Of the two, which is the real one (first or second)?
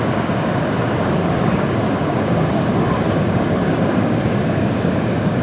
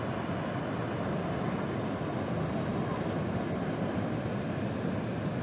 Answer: second